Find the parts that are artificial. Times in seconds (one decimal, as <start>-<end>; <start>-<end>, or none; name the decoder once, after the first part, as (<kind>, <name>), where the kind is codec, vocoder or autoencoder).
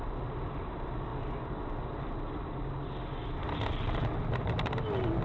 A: none